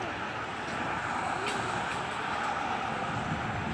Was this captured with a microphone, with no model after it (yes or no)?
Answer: yes